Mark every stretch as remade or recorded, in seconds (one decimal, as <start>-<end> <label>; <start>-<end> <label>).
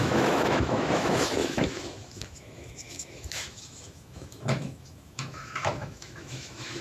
0.0-6.8 remade